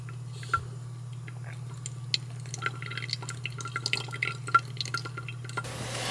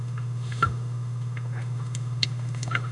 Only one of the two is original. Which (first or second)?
first